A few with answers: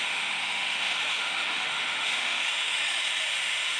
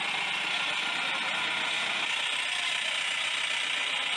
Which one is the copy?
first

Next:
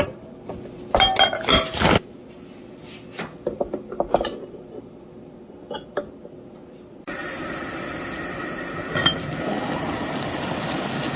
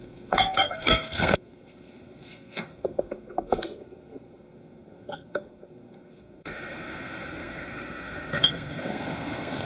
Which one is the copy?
second